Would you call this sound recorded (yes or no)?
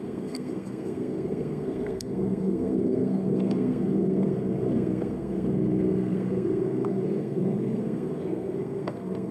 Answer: no